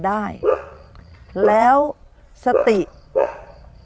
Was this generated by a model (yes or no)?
yes